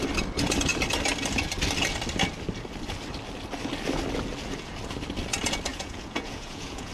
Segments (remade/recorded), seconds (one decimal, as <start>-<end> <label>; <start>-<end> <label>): 0.0-5.7 recorded; 5.7-6.9 remade